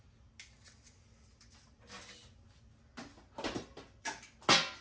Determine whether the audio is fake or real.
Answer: real